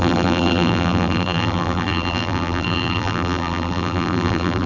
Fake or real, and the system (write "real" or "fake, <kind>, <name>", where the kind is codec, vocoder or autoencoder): fake, vocoder, BigVGAN v2